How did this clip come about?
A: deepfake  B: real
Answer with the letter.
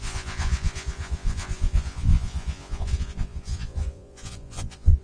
A